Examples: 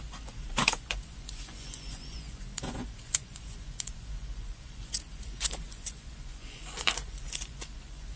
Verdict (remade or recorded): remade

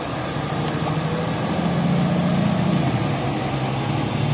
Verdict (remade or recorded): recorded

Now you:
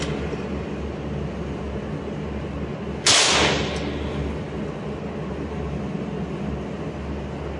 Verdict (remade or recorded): recorded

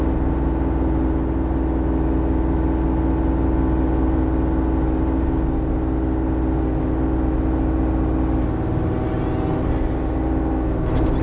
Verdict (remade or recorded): recorded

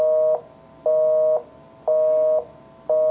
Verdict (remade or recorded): recorded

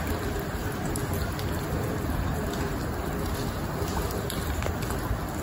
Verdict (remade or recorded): recorded